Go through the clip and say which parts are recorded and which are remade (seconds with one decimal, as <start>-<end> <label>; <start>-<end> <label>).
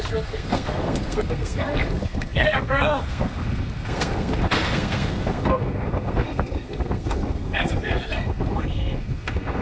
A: 0.0-9.6 remade